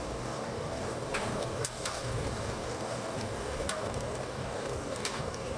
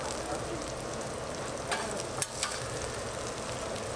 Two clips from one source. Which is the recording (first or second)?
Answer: second